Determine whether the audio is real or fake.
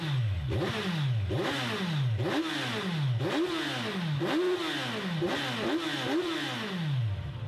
real